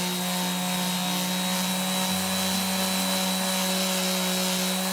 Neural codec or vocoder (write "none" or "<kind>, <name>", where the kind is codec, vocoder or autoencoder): none